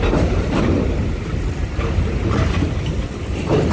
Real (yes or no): no